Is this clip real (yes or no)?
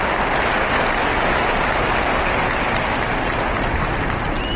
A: yes